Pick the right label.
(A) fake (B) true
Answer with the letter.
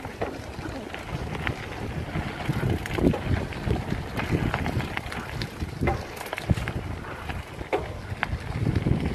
B